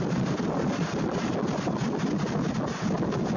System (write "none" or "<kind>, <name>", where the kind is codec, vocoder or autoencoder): none